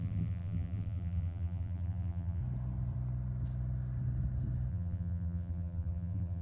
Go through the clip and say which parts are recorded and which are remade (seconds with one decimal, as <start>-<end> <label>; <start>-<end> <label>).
0.0-2.4 remade; 2.4-4.7 recorded; 4.7-6.4 remade